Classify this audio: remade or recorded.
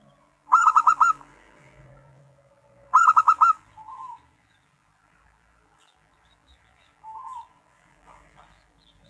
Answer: remade